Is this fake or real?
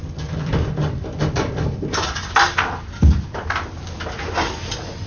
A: real